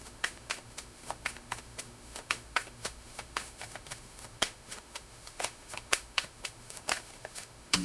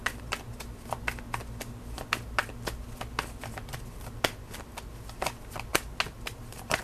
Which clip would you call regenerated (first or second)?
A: first